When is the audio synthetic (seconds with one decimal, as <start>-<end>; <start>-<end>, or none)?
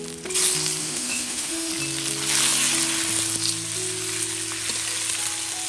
0.8-1.7